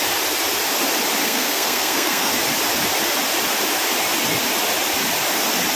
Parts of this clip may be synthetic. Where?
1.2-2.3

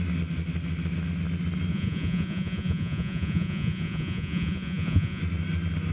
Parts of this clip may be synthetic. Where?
1.7-5.2

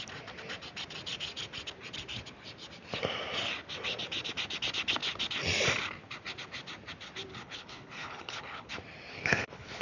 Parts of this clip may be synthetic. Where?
7.3-8.7; 9.1-9.8

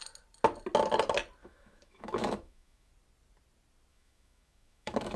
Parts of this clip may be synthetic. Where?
1.4-2.9; 3.9-5.2

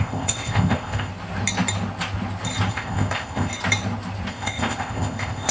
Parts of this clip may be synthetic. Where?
0.0-1.1; 2.7-3.5; 4.3-5.5

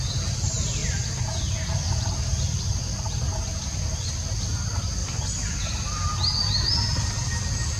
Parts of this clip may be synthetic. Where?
none

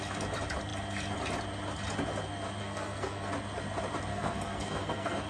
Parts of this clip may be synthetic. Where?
2.6-3.3; 4.1-5.3